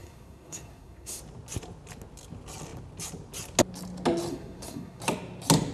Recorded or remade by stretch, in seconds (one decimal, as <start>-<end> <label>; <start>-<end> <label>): 0.0-1.2 remade; 1.2-4.3 recorded; 4.3-5.0 remade; 5.0-5.7 recorded